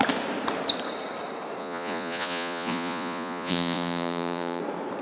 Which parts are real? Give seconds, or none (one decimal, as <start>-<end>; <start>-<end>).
0.0-1.6; 4.6-5.0